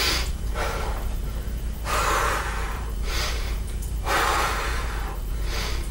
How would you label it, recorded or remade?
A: remade